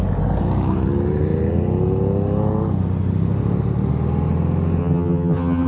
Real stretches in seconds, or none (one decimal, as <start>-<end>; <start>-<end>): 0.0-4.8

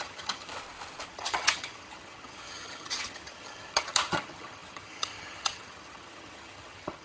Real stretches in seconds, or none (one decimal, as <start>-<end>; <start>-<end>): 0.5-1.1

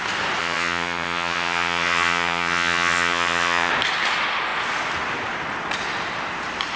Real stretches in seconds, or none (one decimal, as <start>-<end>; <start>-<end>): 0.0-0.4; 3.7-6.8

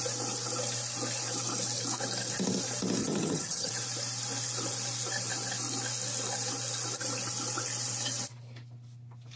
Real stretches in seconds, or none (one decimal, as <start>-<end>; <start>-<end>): 0.0-3.0; 3.7-9.4